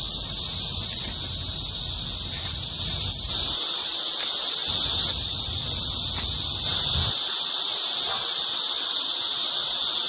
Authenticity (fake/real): real